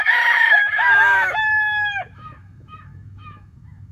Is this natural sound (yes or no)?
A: no